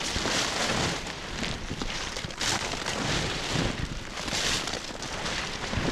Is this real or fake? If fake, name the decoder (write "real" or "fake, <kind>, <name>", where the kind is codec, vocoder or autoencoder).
real